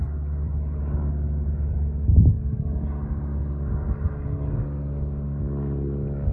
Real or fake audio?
real